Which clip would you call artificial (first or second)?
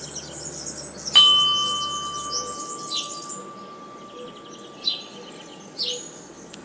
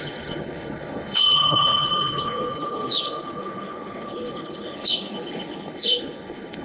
second